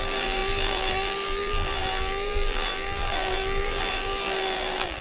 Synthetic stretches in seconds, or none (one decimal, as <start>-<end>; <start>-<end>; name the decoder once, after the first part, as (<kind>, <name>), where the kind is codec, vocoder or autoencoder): 0.0-5.0 (vocoder, BigVGAN v2)